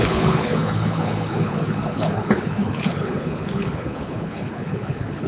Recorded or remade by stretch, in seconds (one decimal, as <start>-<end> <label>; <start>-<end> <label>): 0.0-5.3 remade